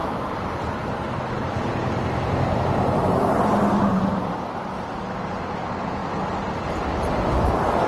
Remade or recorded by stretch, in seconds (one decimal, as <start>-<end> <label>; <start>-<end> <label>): 0.0-4.7 remade; 4.7-7.9 recorded